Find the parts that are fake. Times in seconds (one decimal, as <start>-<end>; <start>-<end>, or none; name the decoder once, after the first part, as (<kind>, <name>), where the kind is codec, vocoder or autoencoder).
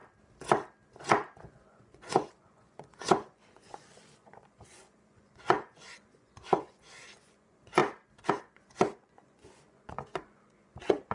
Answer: 1.0-7.8 (vocoder, Vocos); 8.3-11.1